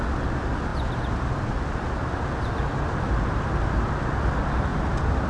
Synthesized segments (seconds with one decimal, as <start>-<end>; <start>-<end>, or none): none